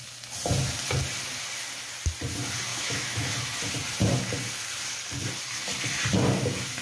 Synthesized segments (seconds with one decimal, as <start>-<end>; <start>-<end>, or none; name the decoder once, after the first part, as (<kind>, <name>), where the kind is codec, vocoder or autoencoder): 2.7-3.3 (autoencoder, DAC-VAE)